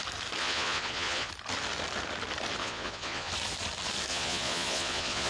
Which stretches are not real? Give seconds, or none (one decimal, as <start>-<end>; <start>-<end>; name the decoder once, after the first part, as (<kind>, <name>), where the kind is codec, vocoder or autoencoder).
0.4-1.3 (vocoder, Vocos); 2.6-3.3; 4.1-5.3